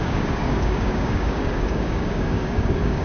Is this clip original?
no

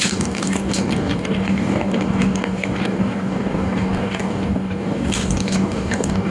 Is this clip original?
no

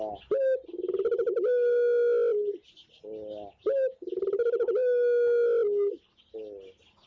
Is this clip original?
yes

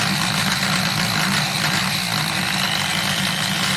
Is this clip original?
yes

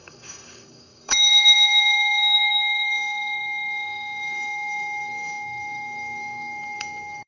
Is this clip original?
no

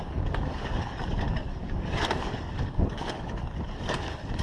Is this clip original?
no